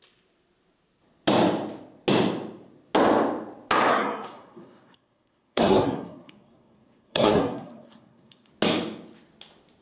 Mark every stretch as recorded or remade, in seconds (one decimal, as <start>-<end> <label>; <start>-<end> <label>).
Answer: 0.0-3.9 recorded; 3.9-8.5 remade; 8.5-9.8 recorded